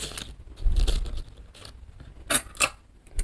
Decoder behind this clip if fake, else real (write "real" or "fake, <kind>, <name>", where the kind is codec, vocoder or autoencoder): real